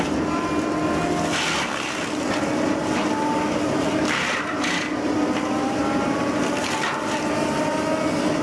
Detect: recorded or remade recorded